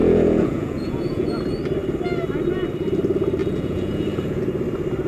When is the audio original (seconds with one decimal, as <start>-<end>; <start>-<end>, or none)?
1.4-3.4; 4.4-5.1